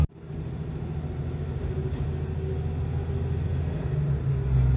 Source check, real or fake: real